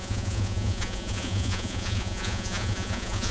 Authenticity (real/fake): fake